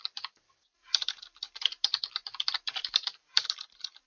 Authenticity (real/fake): fake